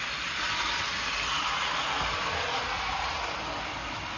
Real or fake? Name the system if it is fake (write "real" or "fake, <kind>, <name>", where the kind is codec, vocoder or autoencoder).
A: real